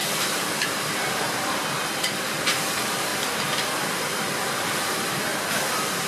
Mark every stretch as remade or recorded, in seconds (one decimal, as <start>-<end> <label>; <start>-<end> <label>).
0.0-3.1 remade; 3.1-3.8 recorded; 3.8-5.3 remade; 5.3-6.1 recorded